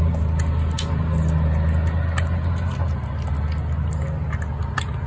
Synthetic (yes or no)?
no